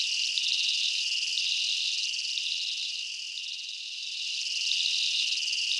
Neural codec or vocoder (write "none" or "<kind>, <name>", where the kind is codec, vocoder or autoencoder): none